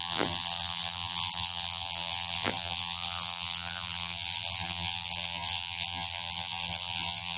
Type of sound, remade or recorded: remade